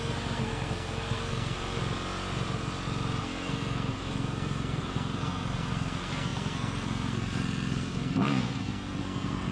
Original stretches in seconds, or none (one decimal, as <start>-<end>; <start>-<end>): 1.8-3.2